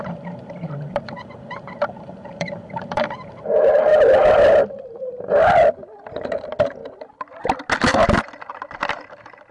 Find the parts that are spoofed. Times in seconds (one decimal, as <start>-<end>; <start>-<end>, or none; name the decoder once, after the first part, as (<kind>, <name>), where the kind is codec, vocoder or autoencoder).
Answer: 0.0-3.3 (vocoder, BigVGAN v2)